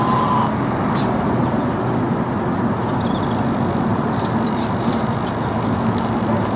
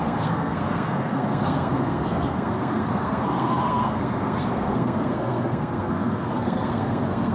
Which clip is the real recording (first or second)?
first